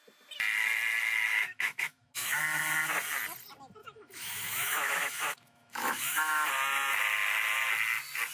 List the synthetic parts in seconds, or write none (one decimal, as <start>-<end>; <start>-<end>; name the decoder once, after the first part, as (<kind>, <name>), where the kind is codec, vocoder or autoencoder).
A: 1.3-2.4 (autoencoder, DAC-VAE); 3.8-6.5